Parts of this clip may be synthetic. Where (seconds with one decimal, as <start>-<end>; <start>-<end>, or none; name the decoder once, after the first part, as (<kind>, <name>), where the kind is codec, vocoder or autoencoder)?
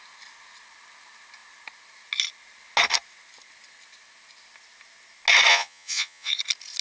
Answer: 5.5-6.3 (vocoder, Vocos)